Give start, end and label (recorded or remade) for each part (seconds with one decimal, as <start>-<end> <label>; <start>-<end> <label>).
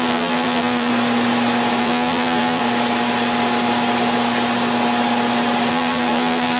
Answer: 0.0-0.9 remade; 0.9-1.8 recorded; 1.8-2.6 remade; 2.6-5.7 recorded; 5.7-6.6 remade